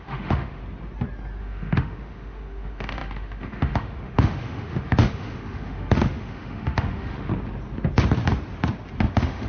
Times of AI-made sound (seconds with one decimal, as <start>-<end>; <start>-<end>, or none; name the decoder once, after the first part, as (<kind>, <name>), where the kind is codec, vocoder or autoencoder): 0.0-0.6 (autoencoder, DAC-VAE); 1.4-7.3; 9.1-9.5